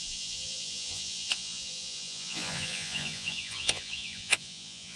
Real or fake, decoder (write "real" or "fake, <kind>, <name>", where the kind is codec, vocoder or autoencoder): fake, vocoder, Vocos